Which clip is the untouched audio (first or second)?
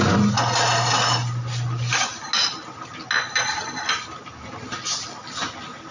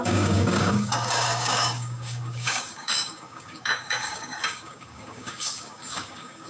first